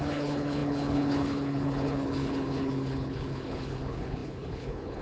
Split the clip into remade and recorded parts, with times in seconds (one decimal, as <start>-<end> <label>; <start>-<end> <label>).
0.0-5.0 remade